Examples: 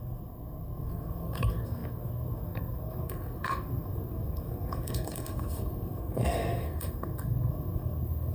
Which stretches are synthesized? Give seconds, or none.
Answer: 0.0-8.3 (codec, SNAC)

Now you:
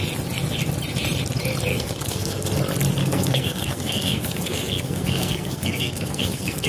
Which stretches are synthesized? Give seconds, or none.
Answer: 1.7-2.5 (codec, SNAC); 3.0-6.7

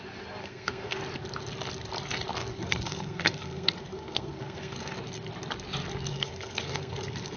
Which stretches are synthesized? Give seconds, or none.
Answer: 0.4-1.0 (codec, SNAC); 2.4-4.9; 6.1-7.4

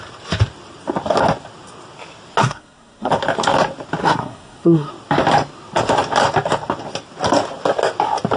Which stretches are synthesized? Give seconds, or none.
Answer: 2.4-3.1 (codec, SNAC); 4.0-4.9